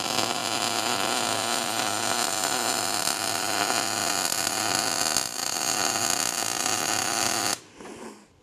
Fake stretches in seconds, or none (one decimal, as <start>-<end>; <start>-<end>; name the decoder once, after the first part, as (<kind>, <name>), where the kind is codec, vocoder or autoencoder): 7.0-7.6 (autoencoder, DAC-VAE)